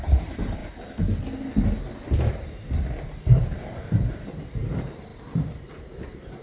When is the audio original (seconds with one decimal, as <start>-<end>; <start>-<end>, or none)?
0.6-2.3